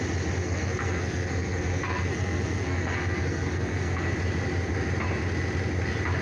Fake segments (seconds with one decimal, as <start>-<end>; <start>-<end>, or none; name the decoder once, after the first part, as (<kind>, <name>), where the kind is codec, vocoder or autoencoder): 0.4-4.1 (codec, SNAC)